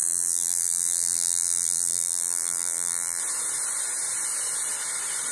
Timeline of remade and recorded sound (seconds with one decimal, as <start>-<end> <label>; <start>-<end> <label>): 0.0-3.2 remade; 3.2-5.3 recorded